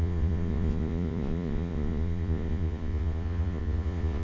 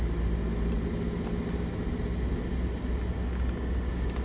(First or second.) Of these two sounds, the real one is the second